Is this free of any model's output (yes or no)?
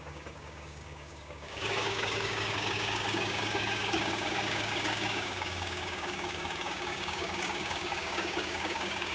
no